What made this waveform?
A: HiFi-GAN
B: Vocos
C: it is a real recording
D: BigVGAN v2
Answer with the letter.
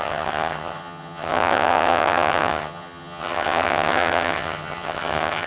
A